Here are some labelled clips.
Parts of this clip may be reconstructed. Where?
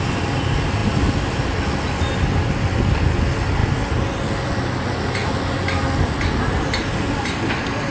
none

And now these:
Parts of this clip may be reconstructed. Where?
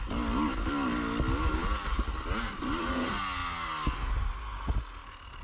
1.6-2.8 (vocoder, BigVGAN v2)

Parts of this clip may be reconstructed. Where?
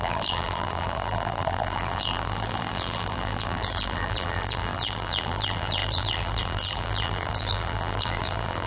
0.0-8.7 (vocoder, BigVGAN v2)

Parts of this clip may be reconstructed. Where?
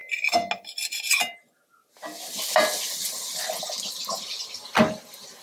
none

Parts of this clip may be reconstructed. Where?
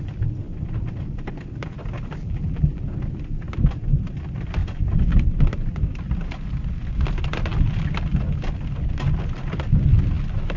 2.2-2.8 (vocoder, BigVGAN v2)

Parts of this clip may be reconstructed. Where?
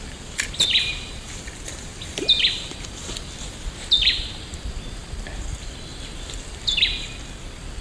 0.0-7.8 (vocoder, BigVGAN v2)